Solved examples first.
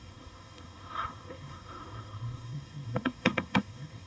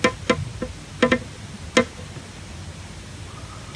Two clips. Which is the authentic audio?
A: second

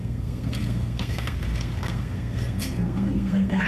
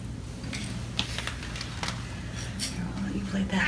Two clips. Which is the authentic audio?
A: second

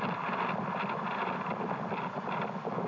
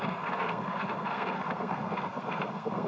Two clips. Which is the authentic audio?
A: first